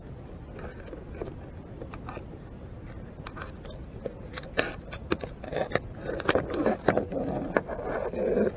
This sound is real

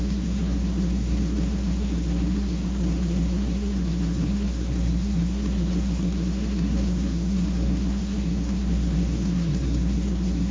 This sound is fake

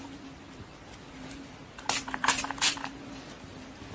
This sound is real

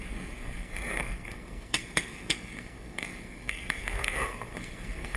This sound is fake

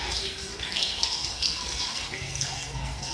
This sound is fake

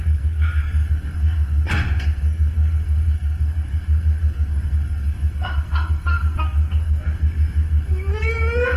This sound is fake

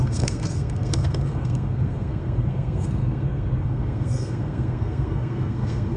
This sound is fake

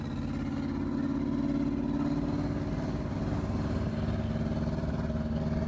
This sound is real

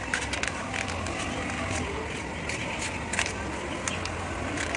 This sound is real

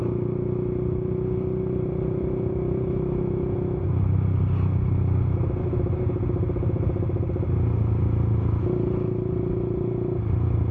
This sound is real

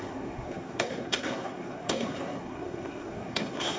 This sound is fake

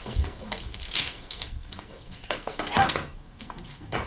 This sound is fake